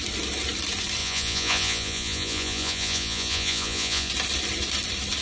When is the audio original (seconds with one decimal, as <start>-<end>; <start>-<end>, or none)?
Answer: 0.0-1.0; 4.1-5.2